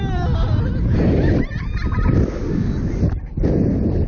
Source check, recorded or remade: recorded